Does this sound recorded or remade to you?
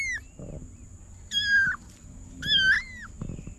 recorded